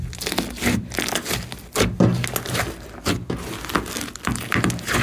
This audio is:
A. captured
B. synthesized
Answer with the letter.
A